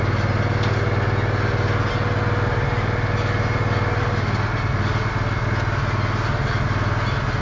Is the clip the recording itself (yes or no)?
yes